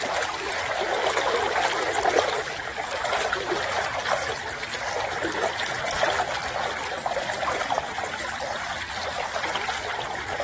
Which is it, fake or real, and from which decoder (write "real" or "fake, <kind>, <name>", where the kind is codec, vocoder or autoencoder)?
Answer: real